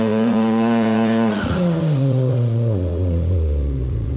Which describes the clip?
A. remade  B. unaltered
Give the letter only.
A